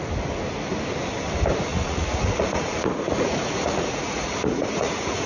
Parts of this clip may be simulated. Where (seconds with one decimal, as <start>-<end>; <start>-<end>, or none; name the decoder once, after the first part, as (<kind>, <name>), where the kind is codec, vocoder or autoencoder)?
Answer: 1.7-5.3 (vocoder, Vocos)

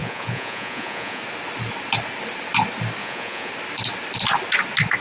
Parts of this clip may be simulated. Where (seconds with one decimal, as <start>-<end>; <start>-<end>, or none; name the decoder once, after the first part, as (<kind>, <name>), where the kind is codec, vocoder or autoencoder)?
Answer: 0.0-1.2 (vocoder, Vocos); 3.0-3.5

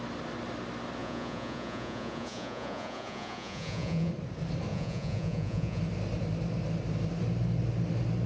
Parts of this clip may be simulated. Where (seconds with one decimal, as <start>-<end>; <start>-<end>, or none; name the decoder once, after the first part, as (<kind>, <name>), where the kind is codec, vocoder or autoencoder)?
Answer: 1.0-4.1 (vocoder, Vocos); 4.7-5.8

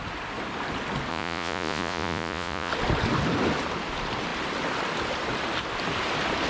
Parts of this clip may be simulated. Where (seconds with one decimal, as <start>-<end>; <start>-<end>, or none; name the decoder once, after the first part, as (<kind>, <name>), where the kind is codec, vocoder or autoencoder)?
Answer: 1.1-2.7 (vocoder, Vocos)

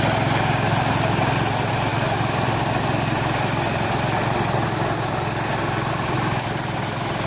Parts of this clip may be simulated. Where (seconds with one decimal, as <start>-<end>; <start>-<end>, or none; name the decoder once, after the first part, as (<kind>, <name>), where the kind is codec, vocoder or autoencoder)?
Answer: none

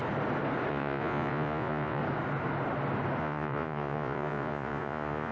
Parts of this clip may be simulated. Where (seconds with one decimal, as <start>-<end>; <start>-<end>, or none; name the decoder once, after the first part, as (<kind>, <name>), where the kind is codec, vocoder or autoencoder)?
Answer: 0.7-2.0 (vocoder, Vocos); 3.2-5.3

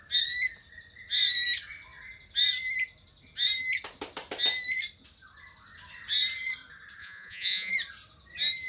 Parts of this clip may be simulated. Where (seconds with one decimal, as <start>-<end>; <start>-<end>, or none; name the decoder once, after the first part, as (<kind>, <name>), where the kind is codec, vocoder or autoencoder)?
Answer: 7.0-7.7 (vocoder, Vocos)

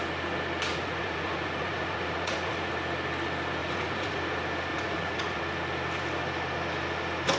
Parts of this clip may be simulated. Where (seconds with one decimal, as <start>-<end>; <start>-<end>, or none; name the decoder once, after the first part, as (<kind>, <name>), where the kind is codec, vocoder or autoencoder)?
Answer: 0.7-2.7 (vocoder, Vocos); 3.6-4.2; 4.7-5.4